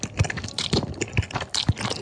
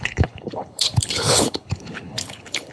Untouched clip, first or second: first